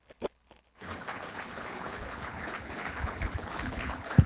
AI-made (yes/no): yes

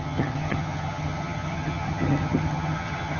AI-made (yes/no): yes